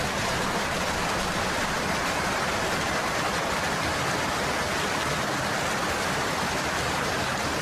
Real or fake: real